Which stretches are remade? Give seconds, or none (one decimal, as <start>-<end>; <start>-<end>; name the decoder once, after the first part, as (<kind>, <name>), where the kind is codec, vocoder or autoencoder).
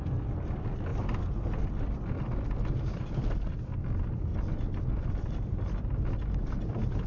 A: 0.0-0.9 (vocoder, BigVGAN v2); 1.6-4.3; 5.1-7.1